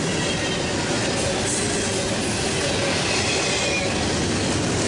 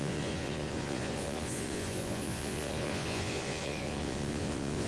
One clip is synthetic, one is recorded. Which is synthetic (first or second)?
second